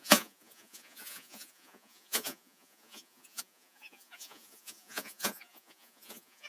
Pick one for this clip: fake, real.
fake